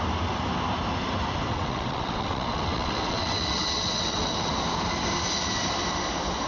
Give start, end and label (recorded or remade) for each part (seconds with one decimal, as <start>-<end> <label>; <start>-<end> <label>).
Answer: 0.0-1.5 recorded; 1.5-4.5 remade; 4.5-6.5 recorded